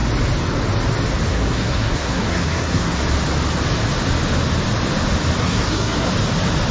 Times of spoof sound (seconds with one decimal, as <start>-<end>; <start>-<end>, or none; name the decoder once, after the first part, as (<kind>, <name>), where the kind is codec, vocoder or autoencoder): 1.3-3.0 (codec, SNAC); 5.4-6.1